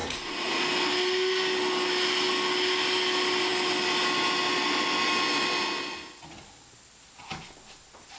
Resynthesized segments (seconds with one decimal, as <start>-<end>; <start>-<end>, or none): 0.0-0.6